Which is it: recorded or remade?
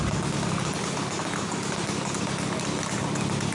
recorded